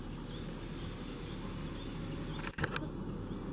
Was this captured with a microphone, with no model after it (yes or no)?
yes